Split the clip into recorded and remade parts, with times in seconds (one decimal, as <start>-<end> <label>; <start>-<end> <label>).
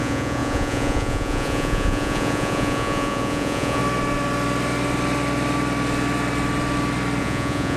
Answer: 0.0-3.8 remade; 3.8-7.2 recorded; 7.2-7.8 remade